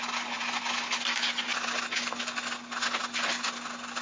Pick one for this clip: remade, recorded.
recorded